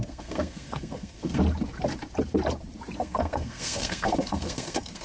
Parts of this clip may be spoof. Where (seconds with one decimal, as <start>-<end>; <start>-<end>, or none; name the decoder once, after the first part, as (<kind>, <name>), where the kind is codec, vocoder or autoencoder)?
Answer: 0.0-1.4 (codec, SNAC); 3.0-5.0